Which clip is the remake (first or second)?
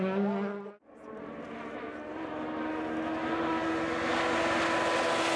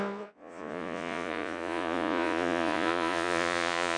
second